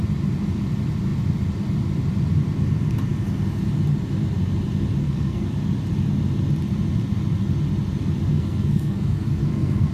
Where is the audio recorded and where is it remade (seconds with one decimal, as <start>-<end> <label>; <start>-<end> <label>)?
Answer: 0.0-5.0 recorded; 5.0-5.5 remade; 5.5-8.3 recorded; 8.3-9.9 remade